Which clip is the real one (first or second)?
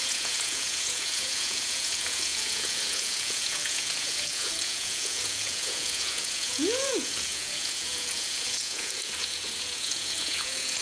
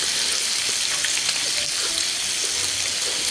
second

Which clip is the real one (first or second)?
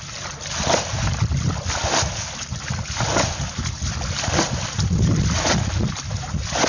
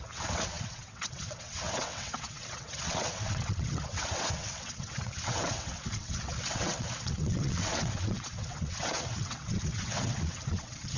first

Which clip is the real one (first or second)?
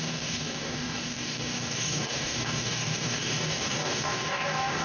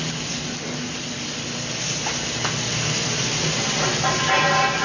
second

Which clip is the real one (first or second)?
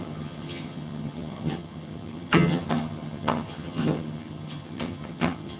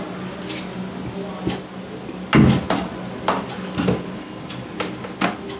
second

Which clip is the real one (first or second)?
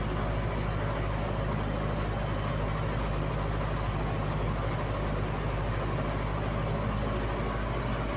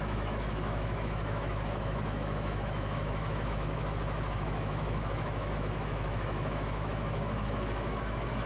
first